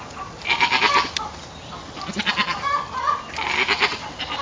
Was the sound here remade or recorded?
recorded